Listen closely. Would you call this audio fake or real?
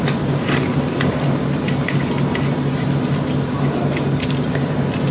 real